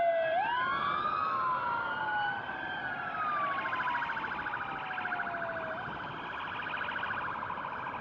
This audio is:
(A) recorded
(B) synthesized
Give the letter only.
A